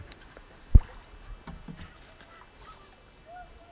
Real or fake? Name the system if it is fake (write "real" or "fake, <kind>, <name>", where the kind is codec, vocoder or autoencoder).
real